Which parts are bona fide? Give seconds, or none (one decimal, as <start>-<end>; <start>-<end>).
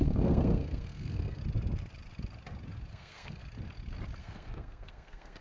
1.4-2.9; 3.4-4.2